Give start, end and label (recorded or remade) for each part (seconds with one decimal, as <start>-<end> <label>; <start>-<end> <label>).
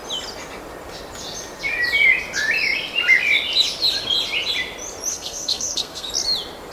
0.0-5.1 recorded; 5.1-6.1 remade; 6.1-6.7 recorded